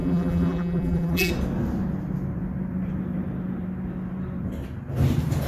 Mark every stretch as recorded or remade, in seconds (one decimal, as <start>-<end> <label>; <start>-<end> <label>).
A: 0.0-1.3 remade; 1.3-5.5 recorded